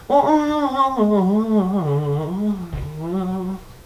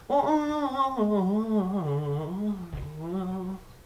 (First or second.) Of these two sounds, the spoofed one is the first